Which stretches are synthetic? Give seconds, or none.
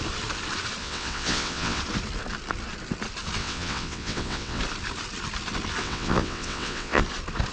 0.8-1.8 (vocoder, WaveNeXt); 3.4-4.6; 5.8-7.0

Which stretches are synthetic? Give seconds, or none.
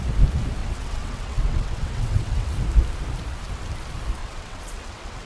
0.6-2.6 (vocoder, WaveNeXt); 4.2-5.3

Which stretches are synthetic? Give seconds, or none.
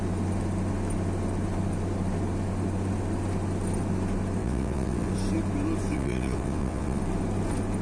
4.4-5.1 (vocoder, WaveNeXt); 5.9-7.0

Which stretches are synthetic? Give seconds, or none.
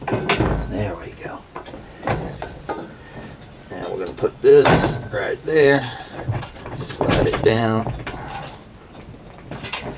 1.0-2.6 (vocoder, WaveNeXt); 4.5-7.8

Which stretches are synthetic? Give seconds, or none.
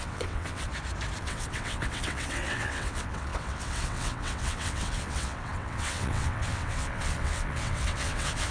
0.0-0.7 (vocoder, WaveNeXt); 1.2-8.5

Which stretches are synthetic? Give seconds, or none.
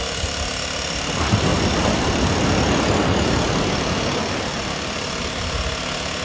none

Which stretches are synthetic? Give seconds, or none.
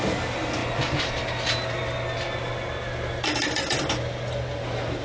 none